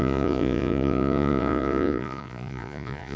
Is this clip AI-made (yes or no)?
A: yes